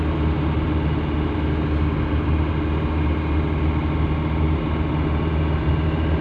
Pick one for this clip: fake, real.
real